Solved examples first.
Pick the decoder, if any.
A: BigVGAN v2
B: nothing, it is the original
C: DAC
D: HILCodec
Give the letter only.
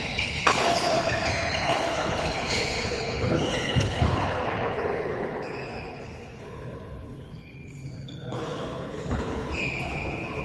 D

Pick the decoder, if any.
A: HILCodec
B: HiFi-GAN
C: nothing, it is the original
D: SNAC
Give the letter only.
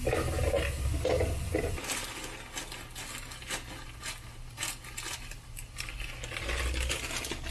C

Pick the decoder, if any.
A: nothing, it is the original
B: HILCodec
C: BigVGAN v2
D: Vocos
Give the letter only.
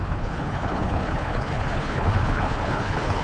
B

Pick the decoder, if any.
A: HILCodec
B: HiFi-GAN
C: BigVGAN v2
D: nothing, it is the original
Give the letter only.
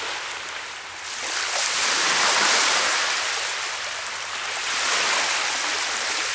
D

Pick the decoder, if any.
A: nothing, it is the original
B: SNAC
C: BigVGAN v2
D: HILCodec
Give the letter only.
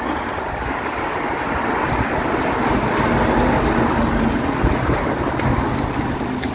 A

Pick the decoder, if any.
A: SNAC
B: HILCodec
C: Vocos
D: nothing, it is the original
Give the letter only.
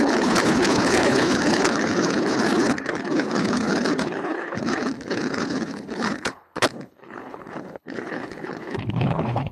B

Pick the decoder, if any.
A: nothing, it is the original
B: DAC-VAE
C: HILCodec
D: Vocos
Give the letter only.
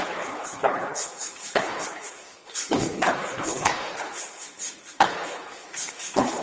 C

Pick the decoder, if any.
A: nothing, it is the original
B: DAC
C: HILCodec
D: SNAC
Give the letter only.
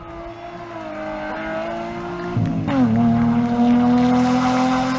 A